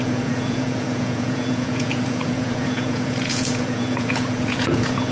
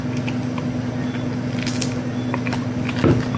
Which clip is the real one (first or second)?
second